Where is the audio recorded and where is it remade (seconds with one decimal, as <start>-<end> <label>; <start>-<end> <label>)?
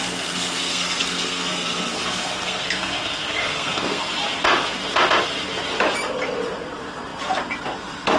0.0-4.1 remade; 4.1-8.2 recorded